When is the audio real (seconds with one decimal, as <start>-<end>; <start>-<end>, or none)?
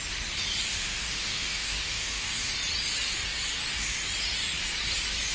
0.0-0.7; 2.5-5.3